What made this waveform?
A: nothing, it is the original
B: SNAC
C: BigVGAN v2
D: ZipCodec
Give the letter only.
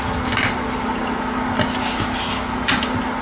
A